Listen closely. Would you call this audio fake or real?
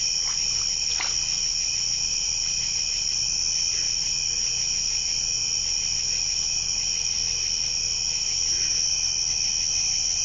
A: real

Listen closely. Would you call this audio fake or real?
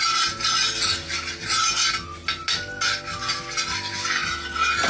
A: real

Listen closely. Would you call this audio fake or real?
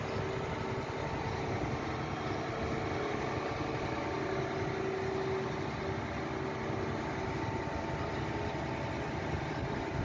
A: real